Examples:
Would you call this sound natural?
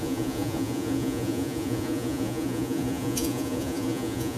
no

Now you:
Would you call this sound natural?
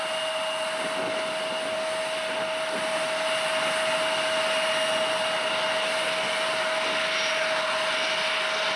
yes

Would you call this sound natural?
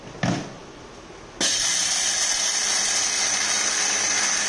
yes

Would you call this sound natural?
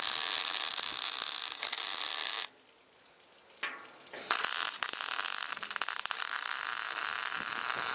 yes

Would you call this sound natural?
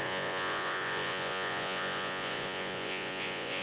no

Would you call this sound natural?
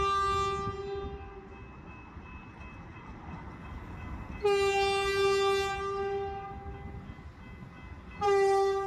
yes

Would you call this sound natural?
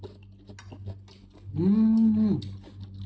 yes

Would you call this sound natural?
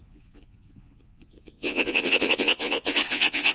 no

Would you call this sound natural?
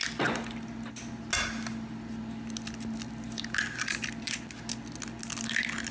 yes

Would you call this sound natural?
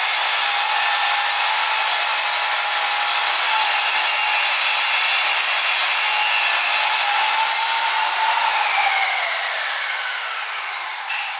yes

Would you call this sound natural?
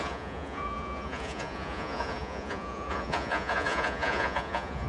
no